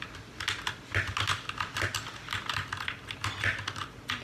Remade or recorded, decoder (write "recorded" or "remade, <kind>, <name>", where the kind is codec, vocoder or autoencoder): recorded